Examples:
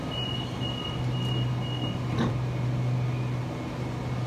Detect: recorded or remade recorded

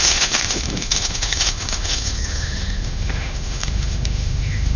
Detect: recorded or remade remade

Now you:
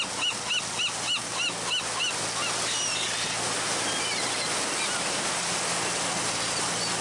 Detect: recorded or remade recorded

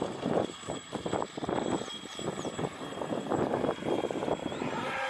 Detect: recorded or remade recorded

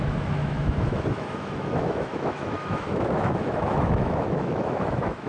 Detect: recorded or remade remade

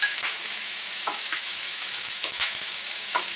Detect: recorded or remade remade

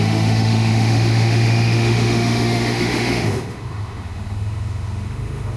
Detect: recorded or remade remade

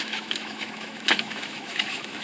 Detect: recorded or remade remade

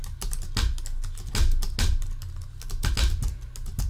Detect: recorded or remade recorded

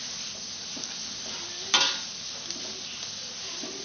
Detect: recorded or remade recorded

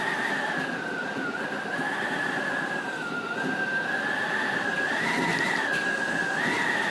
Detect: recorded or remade recorded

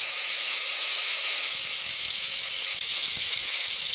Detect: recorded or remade remade